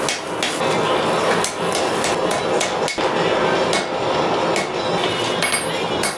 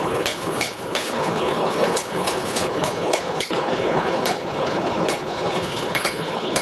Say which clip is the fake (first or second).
second